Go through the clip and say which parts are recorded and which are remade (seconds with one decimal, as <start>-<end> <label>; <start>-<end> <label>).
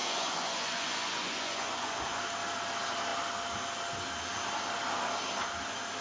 0.0-2.2 remade; 2.2-6.0 recorded